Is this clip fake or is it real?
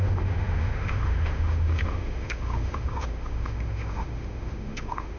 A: fake